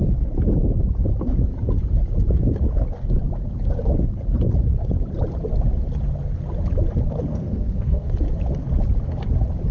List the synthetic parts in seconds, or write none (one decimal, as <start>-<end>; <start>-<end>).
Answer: 7.3-8.1